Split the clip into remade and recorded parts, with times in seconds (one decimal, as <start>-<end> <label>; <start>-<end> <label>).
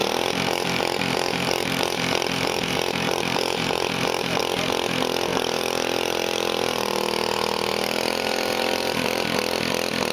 0.0-4.4 remade; 4.4-5.3 recorded; 5.3-9.4 remade; 9.4-10.1 recorded